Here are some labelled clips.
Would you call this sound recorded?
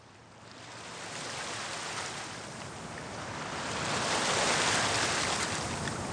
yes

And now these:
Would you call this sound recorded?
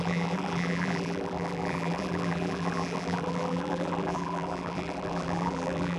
no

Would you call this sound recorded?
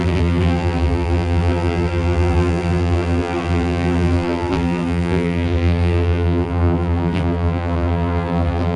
no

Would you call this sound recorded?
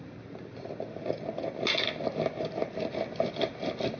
yes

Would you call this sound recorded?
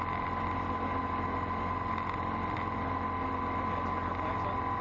yes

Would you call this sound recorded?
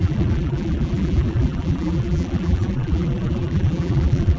no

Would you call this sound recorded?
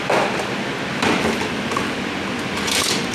yes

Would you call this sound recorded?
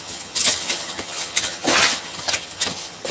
no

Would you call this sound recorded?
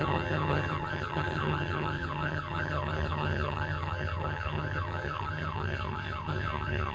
no